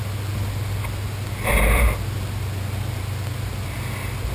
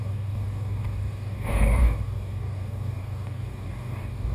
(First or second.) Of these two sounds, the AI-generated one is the second